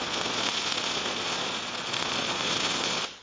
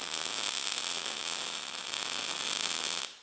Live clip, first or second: second